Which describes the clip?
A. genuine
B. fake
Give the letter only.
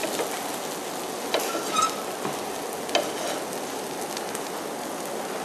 A